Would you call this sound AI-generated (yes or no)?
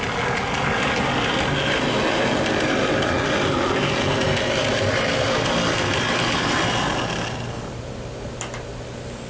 no